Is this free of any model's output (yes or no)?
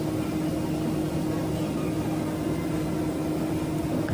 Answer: yes